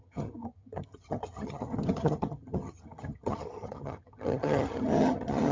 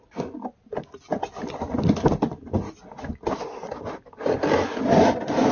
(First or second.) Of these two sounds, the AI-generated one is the first